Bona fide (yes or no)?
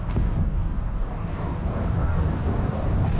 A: no